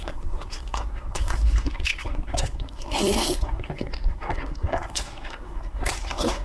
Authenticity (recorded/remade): remade